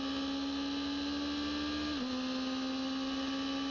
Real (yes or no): yes